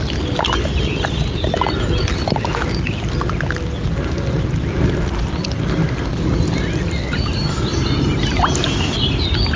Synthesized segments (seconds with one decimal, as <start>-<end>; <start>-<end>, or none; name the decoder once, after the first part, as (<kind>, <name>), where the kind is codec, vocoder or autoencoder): none

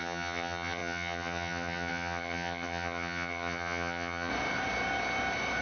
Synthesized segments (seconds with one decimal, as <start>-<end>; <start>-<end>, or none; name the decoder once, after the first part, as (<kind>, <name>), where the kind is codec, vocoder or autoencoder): 0.0-4.3 (vocoder, HiFi-GAN)

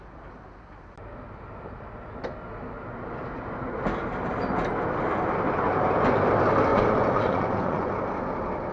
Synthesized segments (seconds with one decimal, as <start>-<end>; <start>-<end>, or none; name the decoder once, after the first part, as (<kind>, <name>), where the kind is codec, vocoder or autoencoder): 6.7-7.9 (vocoder, Vocos)